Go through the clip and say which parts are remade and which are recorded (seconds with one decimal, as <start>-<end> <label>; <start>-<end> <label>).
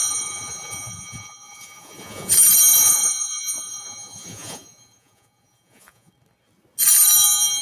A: 0.0-2.3 remade; 2.3-2.7 recorded; 2.7-6.1 remade; 6.1-7.6 recorded